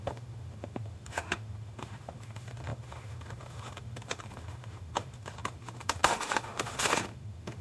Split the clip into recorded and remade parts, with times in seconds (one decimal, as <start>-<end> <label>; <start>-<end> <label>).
0.0-7.6 remade